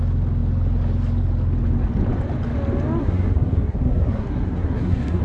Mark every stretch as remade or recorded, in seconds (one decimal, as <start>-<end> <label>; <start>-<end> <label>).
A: 0.0-3.0 recorded; 3.0-5.2 remade